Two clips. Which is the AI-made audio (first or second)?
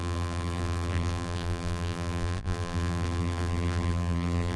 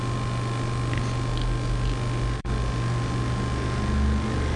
first